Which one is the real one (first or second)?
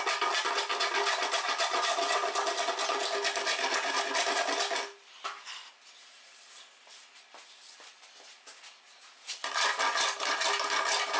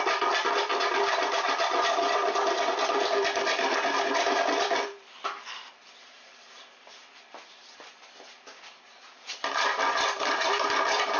first